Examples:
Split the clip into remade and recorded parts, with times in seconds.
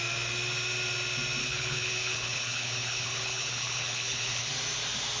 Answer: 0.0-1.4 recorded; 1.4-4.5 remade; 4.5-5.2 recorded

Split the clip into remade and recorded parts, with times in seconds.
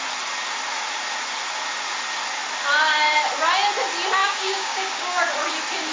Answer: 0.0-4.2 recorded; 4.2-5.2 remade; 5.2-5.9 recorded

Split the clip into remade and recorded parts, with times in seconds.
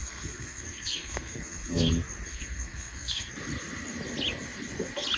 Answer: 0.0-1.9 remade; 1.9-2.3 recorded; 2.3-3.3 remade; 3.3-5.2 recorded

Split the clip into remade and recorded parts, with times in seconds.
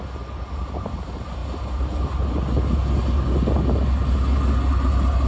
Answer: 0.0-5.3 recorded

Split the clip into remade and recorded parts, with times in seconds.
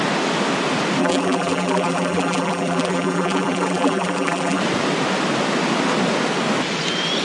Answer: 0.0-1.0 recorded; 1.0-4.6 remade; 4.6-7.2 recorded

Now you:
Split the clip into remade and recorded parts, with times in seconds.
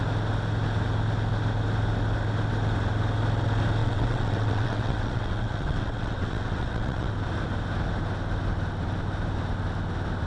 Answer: 0.0-3.8 recorded; 3.8-7.1 remade; 7.1-10.3 recorded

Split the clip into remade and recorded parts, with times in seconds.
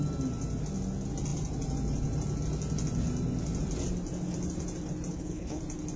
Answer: 0.0-5.1 recorded; 5.1-5.6 remade; 5.6-6.0 recorded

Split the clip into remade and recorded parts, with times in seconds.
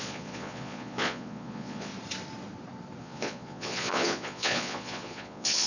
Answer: 0.0-1.9 remade; 1.9-3.0 recorded; 3.0-5.7 remade